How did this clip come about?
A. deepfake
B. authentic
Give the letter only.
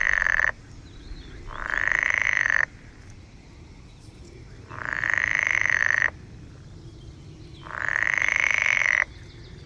B